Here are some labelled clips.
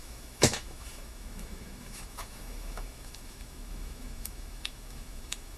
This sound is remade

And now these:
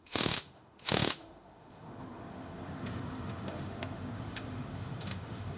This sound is remade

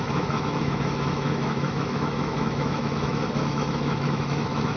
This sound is remade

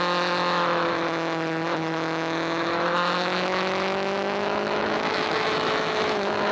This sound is remade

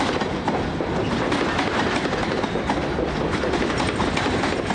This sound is recorded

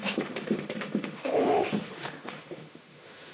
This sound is remade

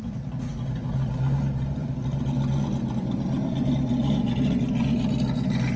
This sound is recorded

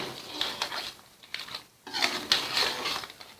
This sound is recorded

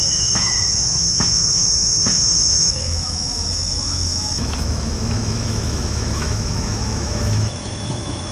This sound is remade